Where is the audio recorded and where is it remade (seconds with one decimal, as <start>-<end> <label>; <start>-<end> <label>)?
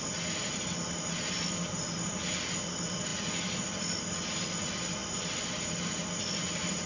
0.0-3.1 remade; 3.1-4.4 recorded; 4.4-6.9 remade